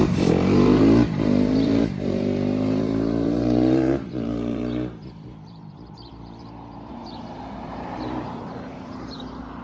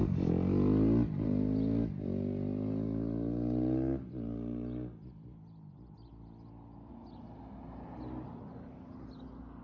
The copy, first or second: first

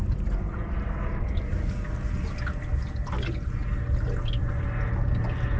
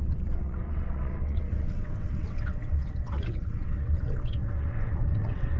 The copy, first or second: second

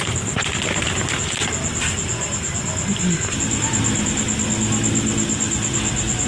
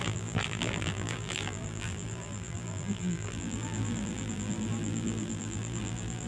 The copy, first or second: second